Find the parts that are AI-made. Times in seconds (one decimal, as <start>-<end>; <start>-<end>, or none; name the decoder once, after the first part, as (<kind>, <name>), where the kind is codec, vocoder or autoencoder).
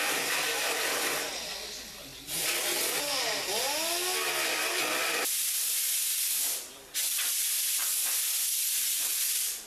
0.0-2.1 (vocoder, BigVGAN v2); 4.8-9.7